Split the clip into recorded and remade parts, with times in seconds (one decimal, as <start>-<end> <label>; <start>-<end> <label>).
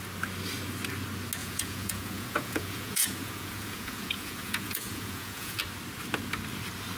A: 0.0-1.4 recorded; 1.4-5.6 remade; 5.6-7.0 recorded